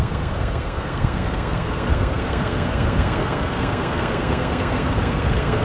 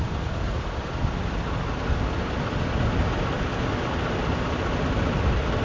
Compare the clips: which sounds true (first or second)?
second